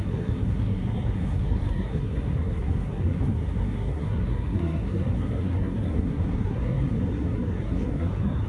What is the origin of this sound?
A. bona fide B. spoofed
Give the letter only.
B